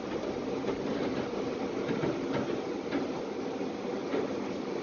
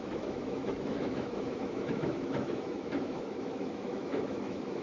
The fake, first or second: second